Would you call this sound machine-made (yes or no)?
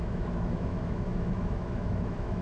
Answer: yes